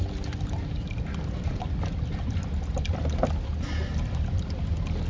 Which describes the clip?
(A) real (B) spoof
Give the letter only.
A